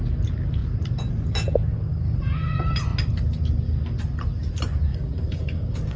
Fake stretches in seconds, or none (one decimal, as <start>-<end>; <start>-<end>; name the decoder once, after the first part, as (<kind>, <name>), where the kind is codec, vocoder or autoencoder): 1.7-2.2 (codec, DAC); 4.9-6.0